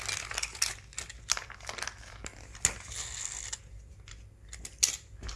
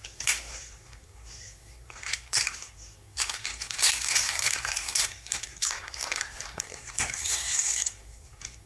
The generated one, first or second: second